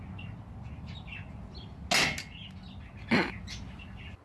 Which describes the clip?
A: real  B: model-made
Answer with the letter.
A